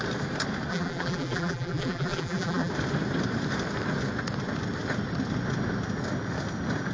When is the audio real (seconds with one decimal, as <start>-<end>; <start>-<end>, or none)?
0.0-0.7; 2.7-6.9